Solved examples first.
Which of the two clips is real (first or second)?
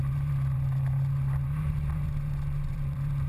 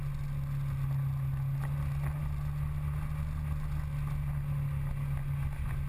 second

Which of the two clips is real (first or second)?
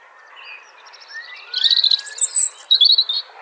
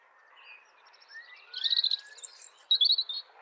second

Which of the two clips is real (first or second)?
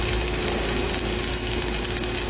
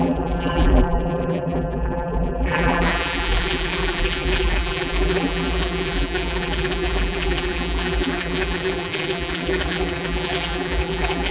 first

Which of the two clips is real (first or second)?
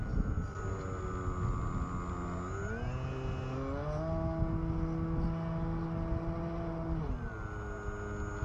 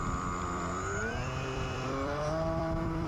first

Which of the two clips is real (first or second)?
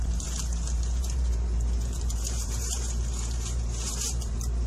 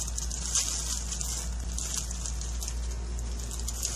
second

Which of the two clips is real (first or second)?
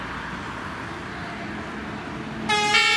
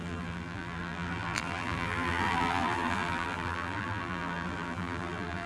first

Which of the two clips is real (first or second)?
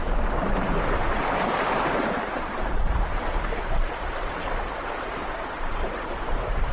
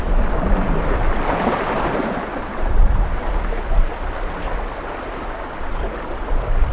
second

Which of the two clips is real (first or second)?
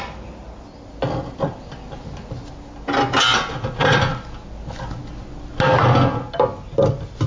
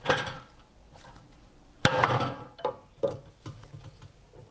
first